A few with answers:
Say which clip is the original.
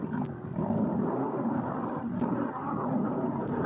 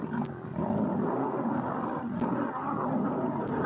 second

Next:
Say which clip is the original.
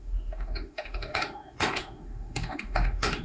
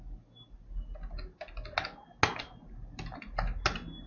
second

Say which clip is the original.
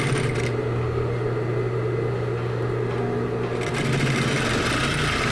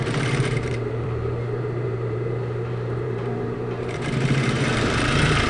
first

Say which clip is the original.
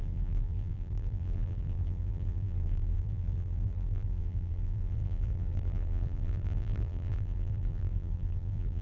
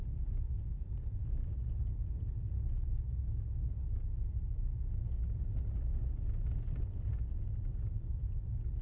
second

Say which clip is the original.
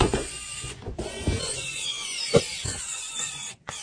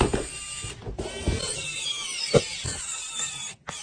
second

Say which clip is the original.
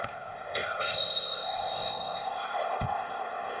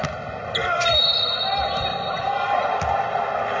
second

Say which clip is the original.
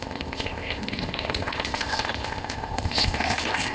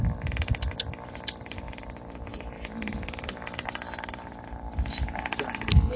second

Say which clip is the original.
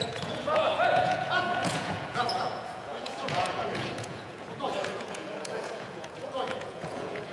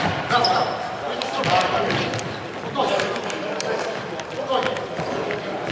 second